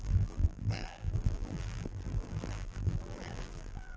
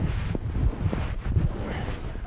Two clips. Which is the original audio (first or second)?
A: second